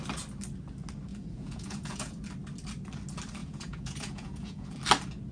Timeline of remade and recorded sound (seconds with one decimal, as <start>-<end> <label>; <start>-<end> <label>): 0.0-1.1 recorded; 1.1-2.1 remade; 2.1-3.4 recorded; 3.4-4.7 remade; 4.7-5.3 recorded